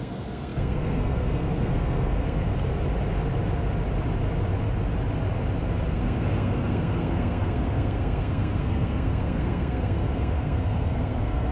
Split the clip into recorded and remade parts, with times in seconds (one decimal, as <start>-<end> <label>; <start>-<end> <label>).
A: 0.0-2.5 remade; 2.5-5.9 recorded; 5.9-11.5 remade